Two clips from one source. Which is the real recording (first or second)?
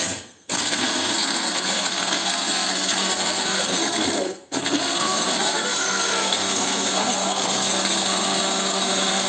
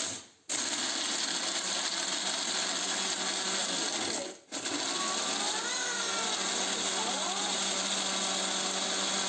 second